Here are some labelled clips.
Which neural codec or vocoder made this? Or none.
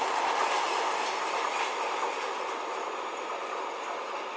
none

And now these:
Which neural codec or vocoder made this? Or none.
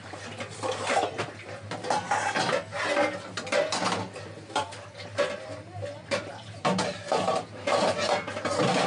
none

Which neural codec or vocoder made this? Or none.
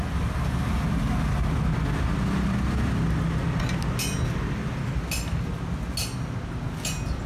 none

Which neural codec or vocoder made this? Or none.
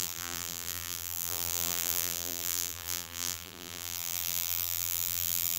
vocoder, BigVGAN v2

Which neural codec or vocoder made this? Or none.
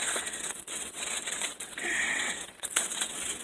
vocoder, WaveNeXt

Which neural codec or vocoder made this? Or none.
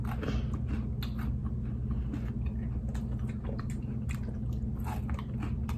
none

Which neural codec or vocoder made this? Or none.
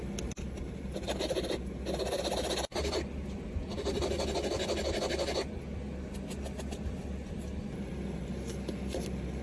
none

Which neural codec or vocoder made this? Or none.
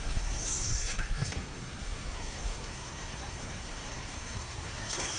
codec, SNAC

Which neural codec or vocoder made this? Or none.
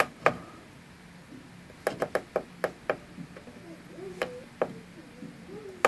none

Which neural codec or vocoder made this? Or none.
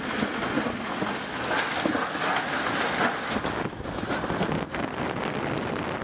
none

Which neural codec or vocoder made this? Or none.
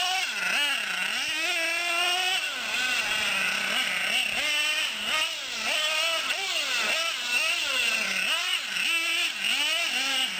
none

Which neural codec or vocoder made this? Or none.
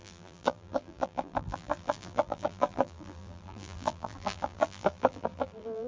vocoder, BigVGAN v2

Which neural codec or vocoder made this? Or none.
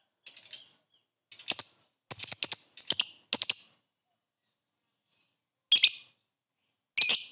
none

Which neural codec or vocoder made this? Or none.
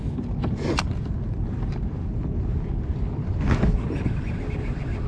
none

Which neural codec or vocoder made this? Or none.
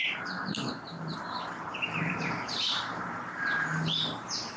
vocoder, BigVGAN v2